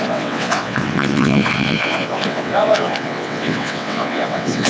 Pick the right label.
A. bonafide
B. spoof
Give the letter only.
B